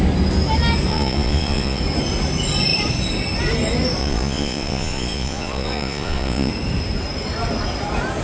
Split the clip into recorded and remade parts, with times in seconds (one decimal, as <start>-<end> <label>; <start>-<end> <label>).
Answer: 0.0-0.9 recorded; 0.9-1.8 remade; 1.8-4.0 recorded; 4.0-6.5 remade; 6.5-8.2 recorded